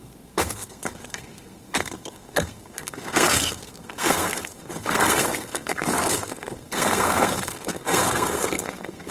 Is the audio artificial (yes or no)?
yes